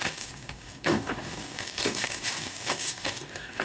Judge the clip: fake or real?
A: fake